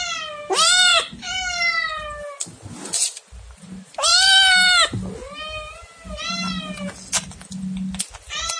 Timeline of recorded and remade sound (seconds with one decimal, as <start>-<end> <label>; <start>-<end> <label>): 0.0-8.6 recorded